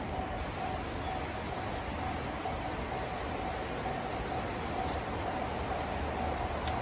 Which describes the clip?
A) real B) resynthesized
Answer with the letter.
A